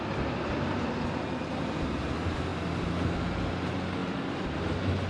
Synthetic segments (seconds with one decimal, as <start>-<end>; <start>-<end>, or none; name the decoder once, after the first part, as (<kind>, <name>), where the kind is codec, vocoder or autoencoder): none